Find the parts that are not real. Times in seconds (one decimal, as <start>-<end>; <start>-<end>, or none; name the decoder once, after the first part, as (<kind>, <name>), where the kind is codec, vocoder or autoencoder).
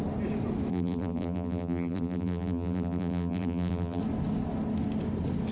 0.7-4.0 (vocoder, BigVGAN v2)